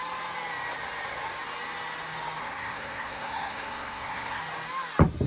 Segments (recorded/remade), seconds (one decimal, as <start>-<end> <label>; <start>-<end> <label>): 0.0-2.4 recorded; 2.4-4.4 remade; 4.4-5.3 recorded